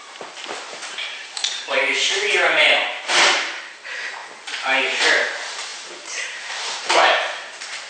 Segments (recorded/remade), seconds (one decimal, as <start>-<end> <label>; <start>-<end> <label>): 0.0-4.2 remade; 4.2-4.8 recorded; 4.8-7.9 remade